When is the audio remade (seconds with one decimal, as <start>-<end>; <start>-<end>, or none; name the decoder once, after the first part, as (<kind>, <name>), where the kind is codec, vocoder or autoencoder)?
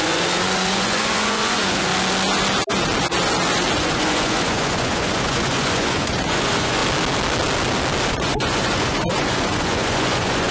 0.0-1.9 (vocoder, Vocos); 3.8-6.8; 8.1-10.5